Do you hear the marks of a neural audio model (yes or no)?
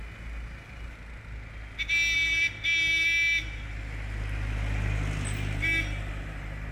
no